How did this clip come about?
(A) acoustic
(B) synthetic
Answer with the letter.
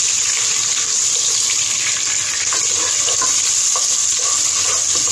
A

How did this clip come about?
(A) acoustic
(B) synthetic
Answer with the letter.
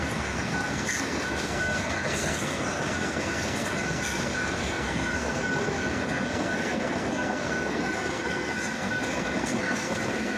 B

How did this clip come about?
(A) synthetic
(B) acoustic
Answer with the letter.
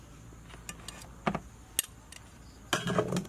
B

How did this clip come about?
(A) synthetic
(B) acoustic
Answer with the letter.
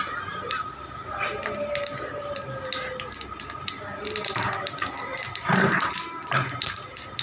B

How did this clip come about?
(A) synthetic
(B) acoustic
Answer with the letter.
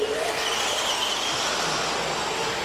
B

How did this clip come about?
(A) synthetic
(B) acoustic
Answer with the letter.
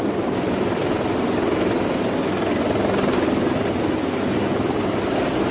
B